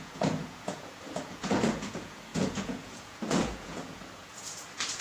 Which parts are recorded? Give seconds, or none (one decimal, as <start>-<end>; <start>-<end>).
none